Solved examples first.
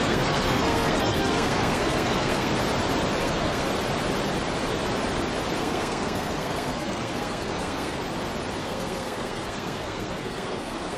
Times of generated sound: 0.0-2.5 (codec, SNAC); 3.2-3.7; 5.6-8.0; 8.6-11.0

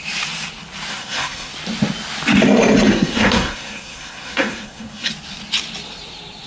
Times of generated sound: 0.9-1.5 (codec, SNAC); 2.9-5.1